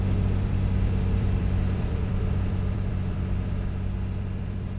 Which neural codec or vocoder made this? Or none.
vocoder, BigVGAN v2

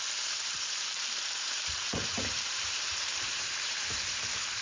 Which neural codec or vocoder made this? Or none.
vocoder, BigVGAN v2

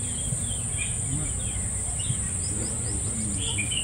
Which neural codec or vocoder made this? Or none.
vocoder, BigVGAN v2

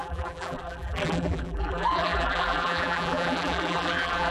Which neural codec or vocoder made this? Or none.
vocoder, BigVGAN v2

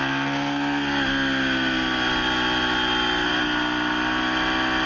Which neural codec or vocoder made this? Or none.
none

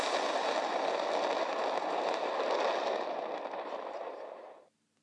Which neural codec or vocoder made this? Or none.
none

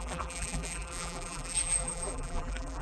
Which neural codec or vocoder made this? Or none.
vocoder, BigVGAN v2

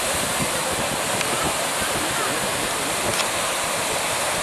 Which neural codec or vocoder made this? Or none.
none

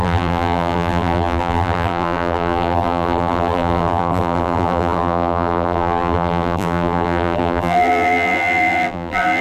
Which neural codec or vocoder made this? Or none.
vocoder, BigVGAN v2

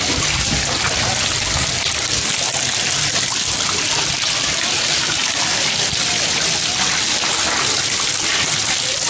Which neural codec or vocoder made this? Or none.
none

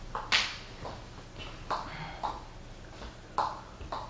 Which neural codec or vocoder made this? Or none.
none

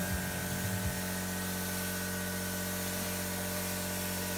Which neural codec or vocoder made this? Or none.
none